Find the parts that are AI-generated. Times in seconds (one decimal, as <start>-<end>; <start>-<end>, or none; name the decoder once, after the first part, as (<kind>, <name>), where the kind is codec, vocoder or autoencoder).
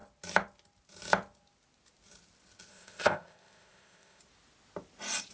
2.7-4.2 (codec, ZipCodec)